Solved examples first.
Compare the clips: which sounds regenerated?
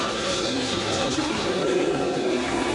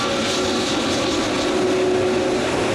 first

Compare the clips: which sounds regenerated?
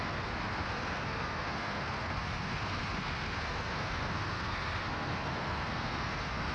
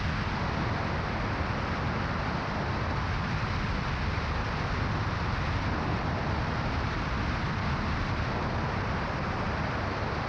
first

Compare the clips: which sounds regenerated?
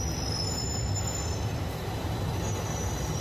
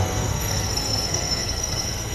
second